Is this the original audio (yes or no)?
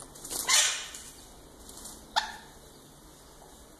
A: yes